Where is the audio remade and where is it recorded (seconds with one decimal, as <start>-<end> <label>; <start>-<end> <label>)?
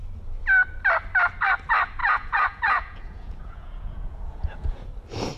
0.0-2.0 recorded; 2.0-4.9 remade; 4.9-5.4 recorded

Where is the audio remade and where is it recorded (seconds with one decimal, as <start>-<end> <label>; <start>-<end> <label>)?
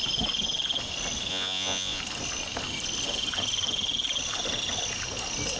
0.0-1.3 recorded; 1.3-2.0 remade; 2.0-5.6 recorded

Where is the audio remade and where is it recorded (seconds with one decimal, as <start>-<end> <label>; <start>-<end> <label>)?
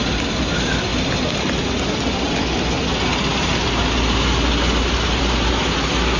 0.0-6.2 recorded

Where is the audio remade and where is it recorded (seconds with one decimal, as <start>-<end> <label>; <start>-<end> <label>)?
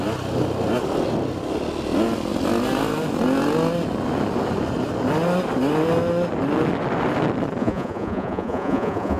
0.0-7.6 recorded; 7.6-9.2 remade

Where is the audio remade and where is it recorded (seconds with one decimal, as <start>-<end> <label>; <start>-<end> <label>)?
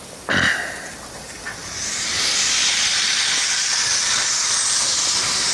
0.0-5.5 recorded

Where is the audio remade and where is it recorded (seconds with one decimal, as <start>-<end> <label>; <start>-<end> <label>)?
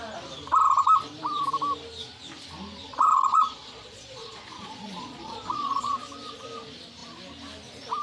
0.0-2.9 recorded; 2.9-6.0 remade; 6.0-8.0 recorded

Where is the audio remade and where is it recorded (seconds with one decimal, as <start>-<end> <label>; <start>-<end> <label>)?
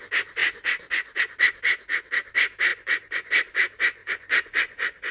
0.0-2.7 recorded; 2.7-3.3 remade; 3.3-4.0 recorded; 4.0-5.1 remade